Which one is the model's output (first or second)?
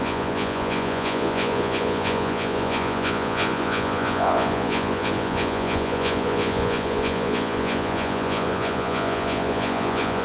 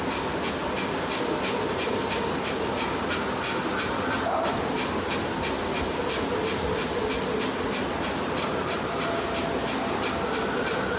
first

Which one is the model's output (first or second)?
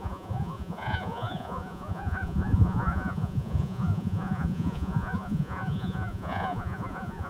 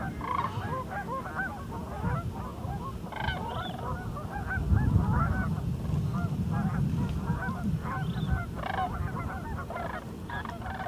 first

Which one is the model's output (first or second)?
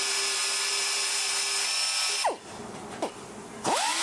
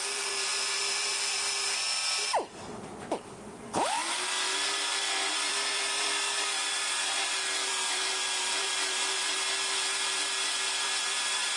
second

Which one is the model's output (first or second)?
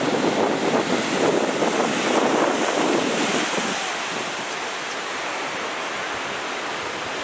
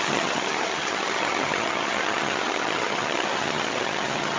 second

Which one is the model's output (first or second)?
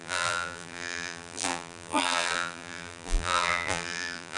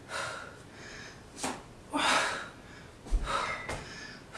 first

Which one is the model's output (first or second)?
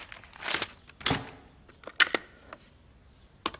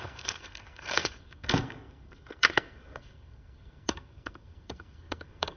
second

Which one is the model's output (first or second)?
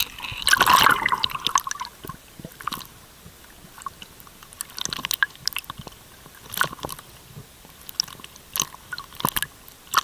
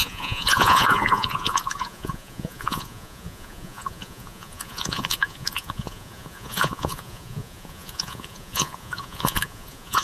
second